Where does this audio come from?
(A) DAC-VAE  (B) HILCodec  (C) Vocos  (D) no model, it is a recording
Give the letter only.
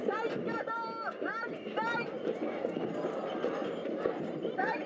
D